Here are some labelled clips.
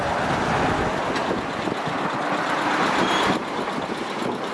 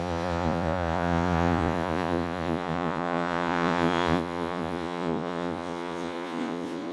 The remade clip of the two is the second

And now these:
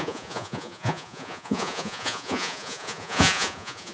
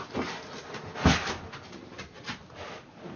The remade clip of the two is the first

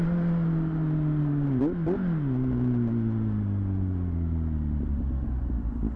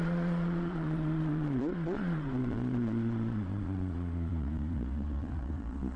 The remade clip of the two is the second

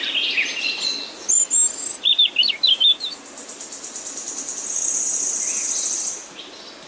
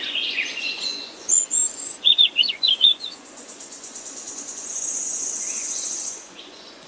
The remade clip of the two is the second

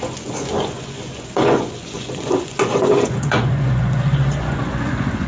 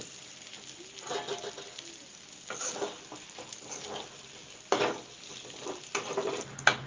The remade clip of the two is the first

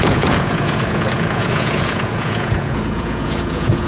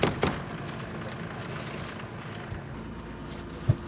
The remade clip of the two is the first